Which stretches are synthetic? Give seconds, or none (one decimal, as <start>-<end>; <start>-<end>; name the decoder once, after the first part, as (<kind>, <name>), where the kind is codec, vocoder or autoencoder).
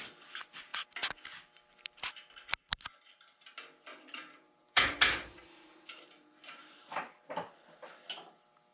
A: 3.9-7.1 (vocoder, BigVGAN v2)